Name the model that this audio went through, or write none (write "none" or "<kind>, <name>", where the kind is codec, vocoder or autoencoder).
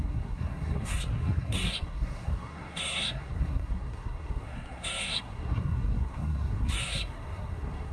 codec, SNAC